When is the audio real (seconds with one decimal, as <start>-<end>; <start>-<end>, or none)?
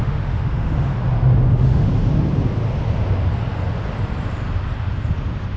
0.9-1.5; 1.9-5.6